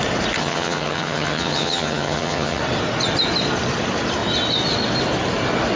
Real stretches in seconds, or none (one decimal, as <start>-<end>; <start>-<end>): 0.0-0.4; 2.6-5.8